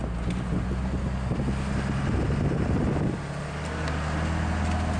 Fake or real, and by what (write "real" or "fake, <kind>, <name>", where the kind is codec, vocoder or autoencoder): real